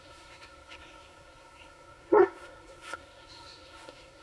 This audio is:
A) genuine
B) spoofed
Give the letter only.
B